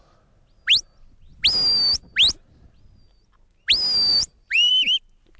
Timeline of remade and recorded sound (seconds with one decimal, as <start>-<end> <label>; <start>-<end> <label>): 0.0-4.1 recorded; 4.1-4.7 remade; 4.7-5.4 recorded